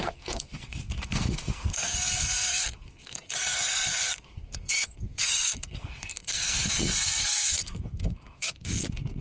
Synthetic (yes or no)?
yes